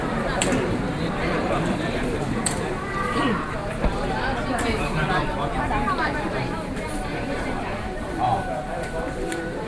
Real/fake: fake